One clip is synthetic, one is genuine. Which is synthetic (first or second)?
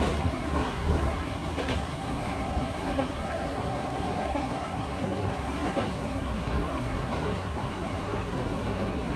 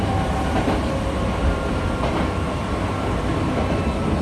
first